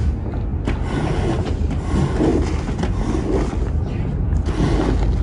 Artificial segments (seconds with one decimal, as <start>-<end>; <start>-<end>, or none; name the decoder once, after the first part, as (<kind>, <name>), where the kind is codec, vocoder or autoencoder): none